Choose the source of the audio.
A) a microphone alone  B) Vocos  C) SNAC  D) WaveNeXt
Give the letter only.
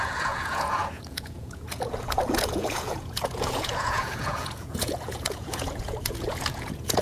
B